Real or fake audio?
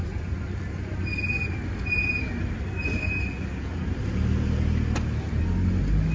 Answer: real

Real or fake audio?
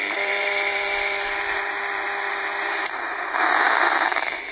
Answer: fake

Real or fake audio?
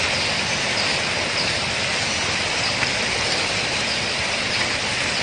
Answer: real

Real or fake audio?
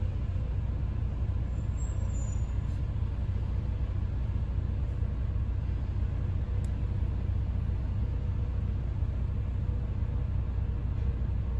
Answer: real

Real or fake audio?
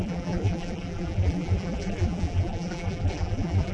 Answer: fake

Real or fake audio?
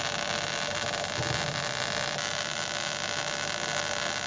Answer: real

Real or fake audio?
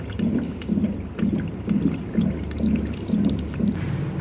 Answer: real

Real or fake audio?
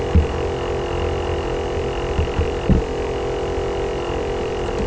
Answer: real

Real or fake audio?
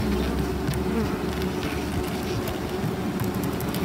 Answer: real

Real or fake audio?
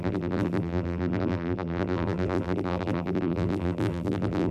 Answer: fake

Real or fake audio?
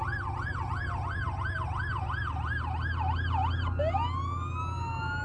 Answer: real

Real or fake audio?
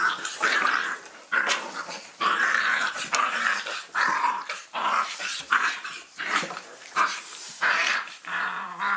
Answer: fake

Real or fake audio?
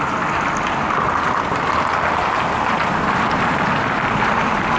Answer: real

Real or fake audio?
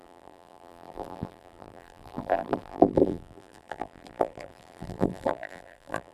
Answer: fake